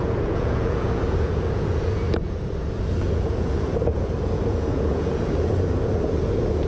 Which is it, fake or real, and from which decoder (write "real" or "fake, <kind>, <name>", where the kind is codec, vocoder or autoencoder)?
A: fake, vocoder, Vocos